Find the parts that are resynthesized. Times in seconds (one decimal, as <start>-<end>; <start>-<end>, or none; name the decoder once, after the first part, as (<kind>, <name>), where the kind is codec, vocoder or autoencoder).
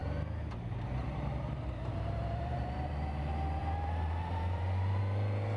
0.0-2.9 (vocoder, BigVGAN v2); 3.6-5.0